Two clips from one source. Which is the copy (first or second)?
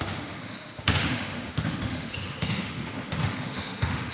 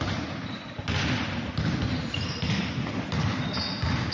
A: first